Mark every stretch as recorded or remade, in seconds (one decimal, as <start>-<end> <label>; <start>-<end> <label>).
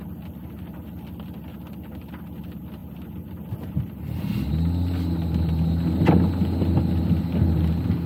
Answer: 0.0-8.1 recorded